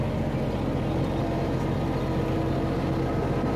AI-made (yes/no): no